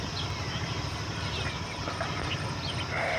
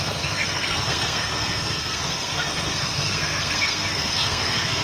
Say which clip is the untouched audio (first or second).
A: first